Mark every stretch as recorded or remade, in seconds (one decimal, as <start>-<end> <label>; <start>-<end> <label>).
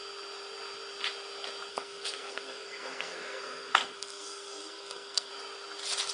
0.0-1.7 recorded; 1.7-5.3 remade; 5.3-6.1 recorded